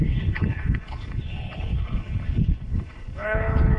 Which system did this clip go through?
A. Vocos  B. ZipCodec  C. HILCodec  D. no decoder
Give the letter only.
C